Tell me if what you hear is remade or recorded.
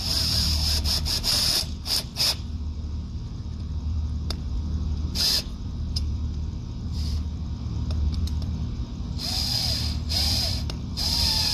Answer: remade